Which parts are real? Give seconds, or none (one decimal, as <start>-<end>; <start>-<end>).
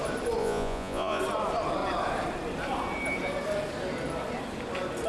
0.0-0.4; 1.2-5.1